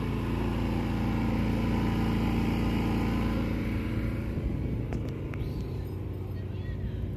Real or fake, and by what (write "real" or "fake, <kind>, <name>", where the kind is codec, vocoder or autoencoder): real